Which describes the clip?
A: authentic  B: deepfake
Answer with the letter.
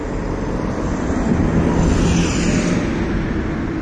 A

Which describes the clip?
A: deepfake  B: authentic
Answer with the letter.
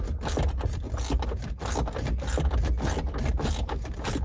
B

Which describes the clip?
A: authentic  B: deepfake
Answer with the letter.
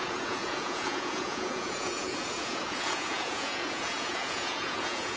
B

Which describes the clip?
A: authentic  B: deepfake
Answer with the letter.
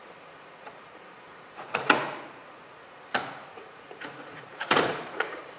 B